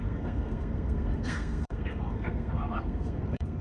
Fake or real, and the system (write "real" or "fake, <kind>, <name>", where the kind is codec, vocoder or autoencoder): fake, codec, SNAC